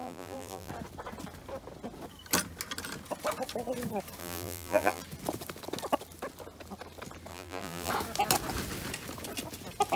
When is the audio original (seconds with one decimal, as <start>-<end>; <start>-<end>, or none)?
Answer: 0.7-4.2; 5.0-7.3; 7.9-10.0